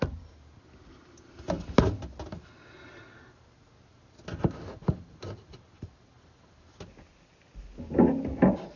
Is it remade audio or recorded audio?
recorded